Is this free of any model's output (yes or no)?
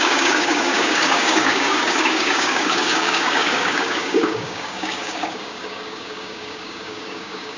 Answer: no